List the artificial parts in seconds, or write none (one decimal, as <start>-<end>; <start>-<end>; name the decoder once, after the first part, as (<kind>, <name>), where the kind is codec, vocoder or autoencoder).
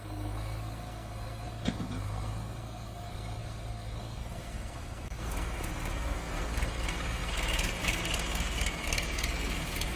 0.0-10.0 (codec, SNAC)